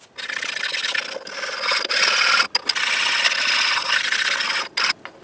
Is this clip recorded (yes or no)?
yes